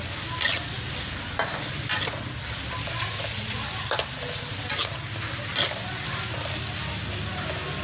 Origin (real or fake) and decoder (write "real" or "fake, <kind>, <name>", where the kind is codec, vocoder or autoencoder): real